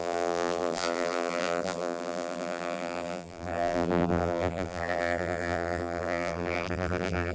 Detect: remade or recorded remade